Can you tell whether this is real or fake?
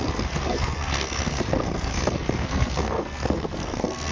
fake